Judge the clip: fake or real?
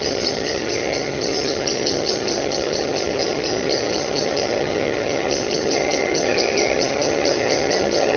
fake